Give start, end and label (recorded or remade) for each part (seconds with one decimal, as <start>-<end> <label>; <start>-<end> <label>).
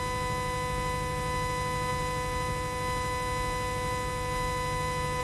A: 0.0-5.2 recorded